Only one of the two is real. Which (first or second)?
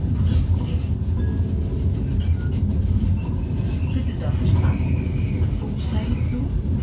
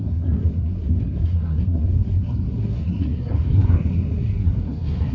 first